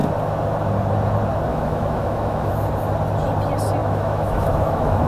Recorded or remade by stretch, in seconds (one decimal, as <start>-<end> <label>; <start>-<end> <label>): 0.0-1.5 recorded; 1.5-2.5 remade; 2.5-3.8 recorded; 3.8-5.1 remade